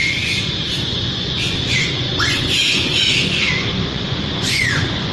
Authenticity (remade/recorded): remade